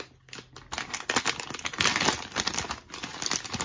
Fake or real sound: real